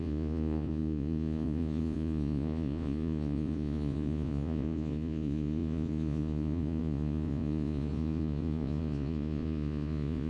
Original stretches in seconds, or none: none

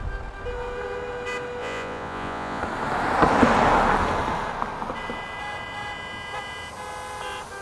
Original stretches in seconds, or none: 0.0-1.6; 2.6-7.6

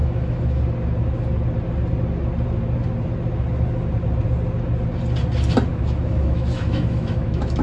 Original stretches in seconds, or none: 0.6-5.7

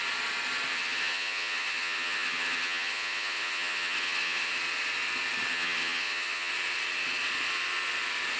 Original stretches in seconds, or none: 0.0-0.7; 4.5-5.5; 6.5-8.4